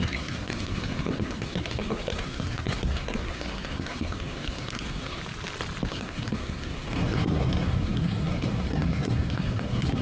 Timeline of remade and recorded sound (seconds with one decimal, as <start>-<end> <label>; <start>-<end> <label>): 0.0-5.2 remade; 5.2-5.9 recorded; 5.9-10.0 remade

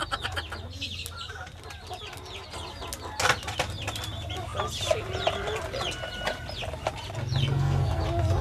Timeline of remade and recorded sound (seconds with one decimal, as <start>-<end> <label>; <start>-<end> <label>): 0.0-7.4 recorded; 7.4-8.0 remade; 8.0-8.4 recorded

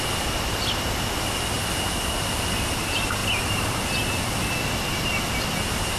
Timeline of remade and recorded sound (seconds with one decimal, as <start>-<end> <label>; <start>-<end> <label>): 0.0-6.0 recorded

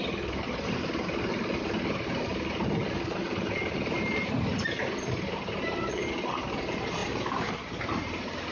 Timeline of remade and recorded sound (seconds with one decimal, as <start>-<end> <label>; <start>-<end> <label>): 0.0-8.5 remade